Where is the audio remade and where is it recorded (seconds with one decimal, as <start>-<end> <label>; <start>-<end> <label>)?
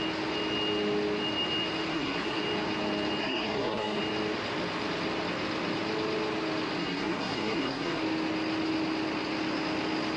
0.0-1.9 recorded; 1.9-2.4 remade; 2.4-3.2 recorded; 3.2-4.0 remade; 4.0-6.8 recorded; 6.8-8.0 remade; 8.0-10.2 recorded